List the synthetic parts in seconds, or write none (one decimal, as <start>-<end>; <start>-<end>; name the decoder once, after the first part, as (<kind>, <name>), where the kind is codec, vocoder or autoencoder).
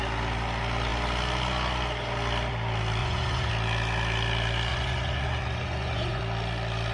3.0-3.5 (vocoder, Vocos); 4.7-6.2